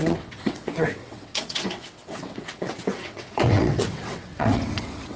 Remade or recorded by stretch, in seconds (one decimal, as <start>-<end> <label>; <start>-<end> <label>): 0.0-5.2 remade